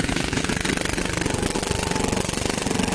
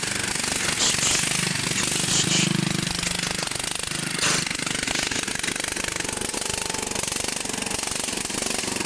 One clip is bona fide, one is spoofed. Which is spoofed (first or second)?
first